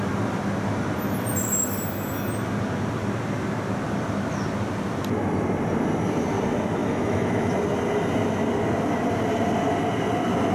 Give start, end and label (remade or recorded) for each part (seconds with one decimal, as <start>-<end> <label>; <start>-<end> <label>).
0.0-6.8 recorded; 6.8-7.5 remade; 7.5-10.5 recorded